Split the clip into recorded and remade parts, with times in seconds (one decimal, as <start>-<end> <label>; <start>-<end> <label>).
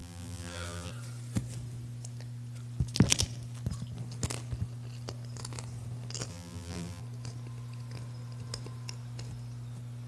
0.0-0.9 remade; 0.9-6.3 recorded; 6.3-7.0 remade; 7.0-10.1 recorded